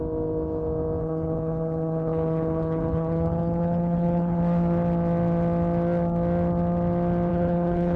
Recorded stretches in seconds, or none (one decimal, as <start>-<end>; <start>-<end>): 0.0-1.0; 4.4-7.3